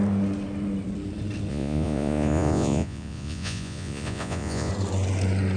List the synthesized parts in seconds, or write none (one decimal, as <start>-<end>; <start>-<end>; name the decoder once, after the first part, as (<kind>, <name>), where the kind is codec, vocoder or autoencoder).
1.5-4.7 (vocoder, Vocos)